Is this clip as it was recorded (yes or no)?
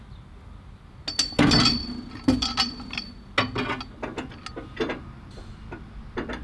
yes